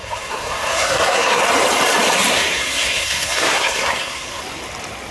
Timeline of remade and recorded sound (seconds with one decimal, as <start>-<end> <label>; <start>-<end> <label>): 0.0-1.4 remade; 1.4-2.3 recorded; 2.3-4.4 remade; 4.4-5.1 recorded